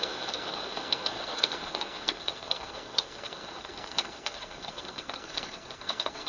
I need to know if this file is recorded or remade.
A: remade